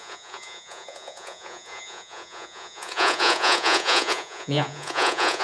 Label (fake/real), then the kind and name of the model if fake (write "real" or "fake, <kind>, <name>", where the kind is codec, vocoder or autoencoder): fake, vocoder, Vocos